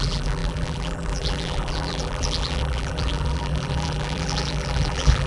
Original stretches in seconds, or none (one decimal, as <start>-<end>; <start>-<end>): none